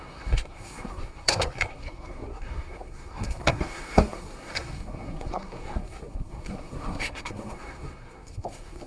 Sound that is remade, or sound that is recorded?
remade